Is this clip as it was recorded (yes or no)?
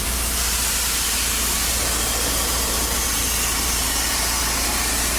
no